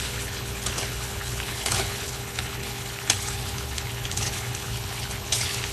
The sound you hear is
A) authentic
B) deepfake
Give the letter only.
B